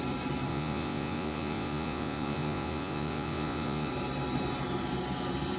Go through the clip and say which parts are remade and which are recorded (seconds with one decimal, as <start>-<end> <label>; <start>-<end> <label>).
0.0-0.5 recorded; 0.5-3.9 remade; 3.9-5.6 recorded